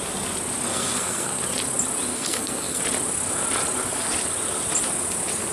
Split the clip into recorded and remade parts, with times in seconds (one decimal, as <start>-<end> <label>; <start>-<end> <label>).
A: 0.0-0.7 recorded; 0.7-1.4 remade; 1.4-2.1 recorded; 2.1-2.8 remade; 2.8-5.5 recorded